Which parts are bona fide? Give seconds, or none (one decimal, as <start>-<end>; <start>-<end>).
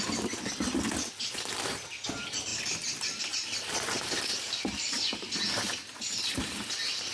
none